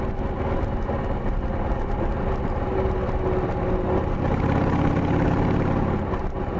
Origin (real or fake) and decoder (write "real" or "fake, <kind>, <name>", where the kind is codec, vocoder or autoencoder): real